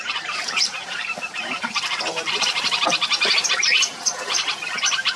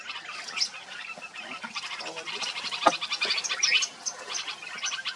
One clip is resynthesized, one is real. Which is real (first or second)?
second